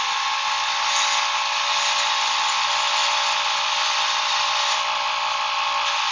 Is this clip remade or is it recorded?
recorded